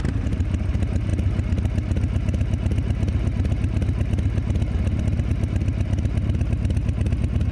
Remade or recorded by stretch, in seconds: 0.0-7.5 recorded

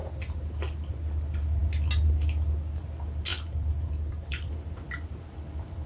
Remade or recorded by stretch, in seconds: 0.0-3.3 recorded; 3.3-4.5 remade; 4.5-5.9 recorded

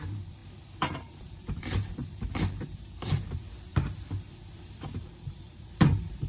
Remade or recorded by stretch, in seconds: 0.0-3.7 remade; 3.7-4.7 recorded; 4.7-6.3 remade

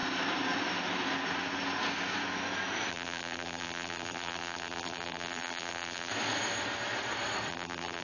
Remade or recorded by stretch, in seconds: 0.0-2.9 recorded; 2.9-6.1 remade; 6.1-7.5 recorded; 7.5-8.0 remade

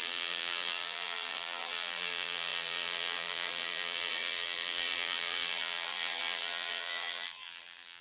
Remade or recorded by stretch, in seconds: 0.0-8.0 remade

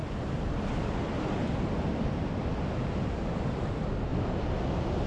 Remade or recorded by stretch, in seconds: 0.0-4.1 recorded; 4.1-4.6 remade; 4.6-5.1 recorded

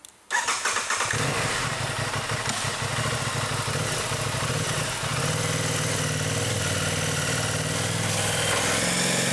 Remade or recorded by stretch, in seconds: 0.0-9.3 recorded